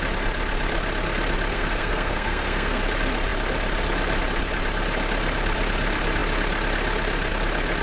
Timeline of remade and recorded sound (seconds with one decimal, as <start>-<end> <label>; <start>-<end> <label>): 0.0-1.5 recorded; 1.5-2.8 remade; 2.8-7.8 recorded